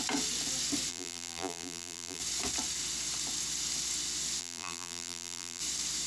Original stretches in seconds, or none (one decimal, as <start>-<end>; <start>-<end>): 0.0-0.9; 2.2-4.4; 5.6-6.1